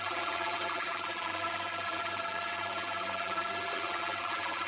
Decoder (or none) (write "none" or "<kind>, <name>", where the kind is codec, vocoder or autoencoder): vocoder, BigVGAN v2